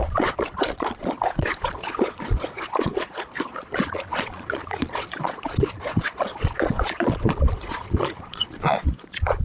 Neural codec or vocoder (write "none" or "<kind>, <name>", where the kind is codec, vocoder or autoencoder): vocoder, Vocos